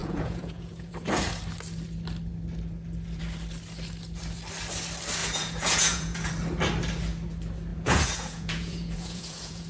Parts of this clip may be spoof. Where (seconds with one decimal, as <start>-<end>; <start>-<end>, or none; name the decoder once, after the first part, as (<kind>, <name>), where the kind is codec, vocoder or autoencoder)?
0.0-0.9 (vocoder, Vocos); 5.2-6.3; 7.7-9.7

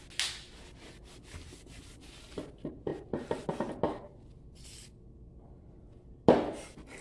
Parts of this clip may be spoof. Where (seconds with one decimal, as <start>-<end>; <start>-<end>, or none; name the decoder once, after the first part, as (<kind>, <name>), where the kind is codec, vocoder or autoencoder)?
none

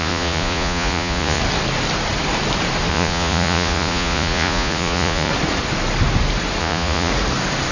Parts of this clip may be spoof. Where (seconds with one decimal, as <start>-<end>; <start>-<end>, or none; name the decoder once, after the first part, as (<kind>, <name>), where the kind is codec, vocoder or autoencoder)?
0.0-1.4 (vocoder, Vocos); 2.9-5.3; 6.6-7.1